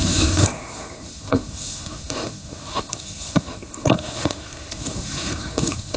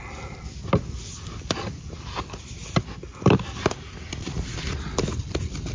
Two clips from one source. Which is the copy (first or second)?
first